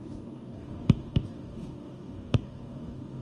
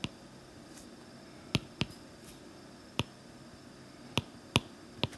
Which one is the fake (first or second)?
first